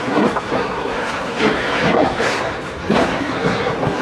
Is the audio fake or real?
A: fake